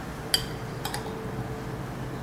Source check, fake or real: real